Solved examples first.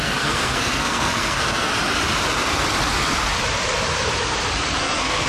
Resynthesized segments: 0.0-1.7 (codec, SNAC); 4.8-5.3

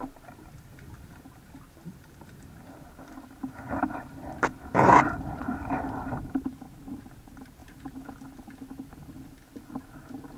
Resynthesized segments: 0.0-0.7 (vocoder, BigVGAN v2); 1.2-7.6; 9.8-10.4

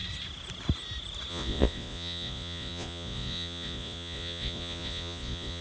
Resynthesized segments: 1.3-5.6 (vocoder, Vocos)

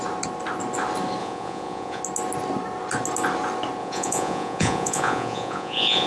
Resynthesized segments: 1.2-2.0 (vocoder, Vocos); 3.8-6.1

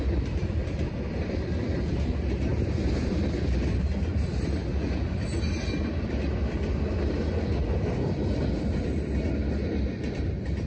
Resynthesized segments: none

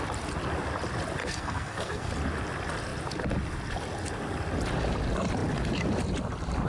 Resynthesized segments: 1.2-2.1 (codec, SNAC)